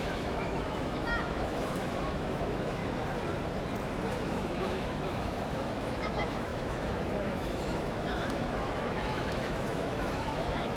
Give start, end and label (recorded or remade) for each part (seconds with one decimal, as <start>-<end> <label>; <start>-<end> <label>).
0.0-2.8 remade; 2.8-4.2 recorded; 4.2-10.8 remade